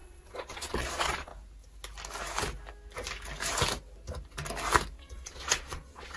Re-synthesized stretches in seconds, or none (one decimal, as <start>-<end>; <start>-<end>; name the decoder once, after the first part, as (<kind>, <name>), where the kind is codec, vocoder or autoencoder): 0.0-1.3 (vocoder, Vocos); 5.0-6.2